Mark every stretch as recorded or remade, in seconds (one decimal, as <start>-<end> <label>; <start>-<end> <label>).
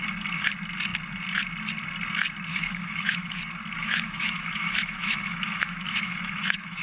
0.0-2.5 recorded; 2.5-3.4 remade; 3.4-3.8 recorded; 3.8-6.8 remade